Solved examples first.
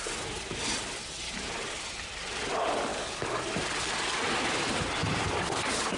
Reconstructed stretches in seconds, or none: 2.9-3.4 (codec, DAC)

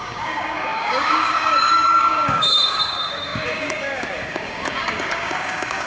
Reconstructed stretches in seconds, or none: 0.0-5.9 (codec, DAC)